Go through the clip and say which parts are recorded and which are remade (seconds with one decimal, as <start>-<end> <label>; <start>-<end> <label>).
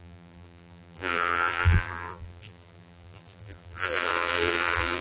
0.0-5.0 remade